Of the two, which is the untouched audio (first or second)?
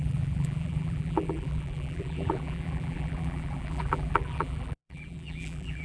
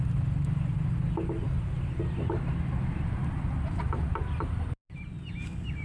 second